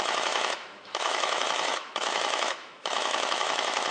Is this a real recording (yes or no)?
no